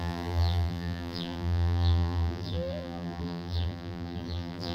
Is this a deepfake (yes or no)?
yes